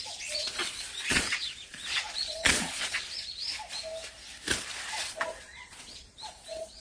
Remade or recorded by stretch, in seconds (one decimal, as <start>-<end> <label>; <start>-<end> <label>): 0.0-3.5 remade; 3.5-5.0 recorded; 5.0-6.8 remade